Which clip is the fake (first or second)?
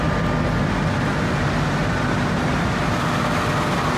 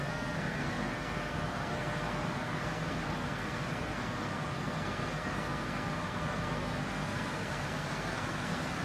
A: second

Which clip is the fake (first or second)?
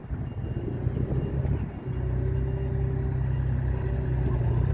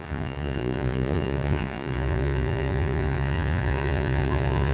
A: second